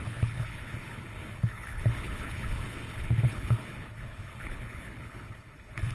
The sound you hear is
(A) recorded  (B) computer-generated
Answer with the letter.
B